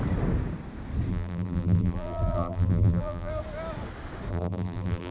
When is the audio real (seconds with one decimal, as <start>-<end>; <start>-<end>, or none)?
0.0-1.1; 3.3-4.3

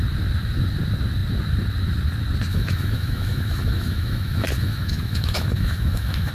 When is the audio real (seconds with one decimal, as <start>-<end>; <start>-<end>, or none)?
0.0-2.5

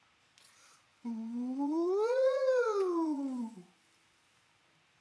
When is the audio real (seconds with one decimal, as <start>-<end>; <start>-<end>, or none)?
0.0-0.4; 3.4-5.0